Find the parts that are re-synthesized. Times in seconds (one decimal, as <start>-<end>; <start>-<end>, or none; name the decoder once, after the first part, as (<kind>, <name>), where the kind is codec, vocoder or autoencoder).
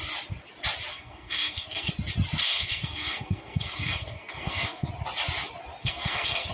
0.9-1.9 (codec, SNAC); 2.4-4.9; 5.8-6.5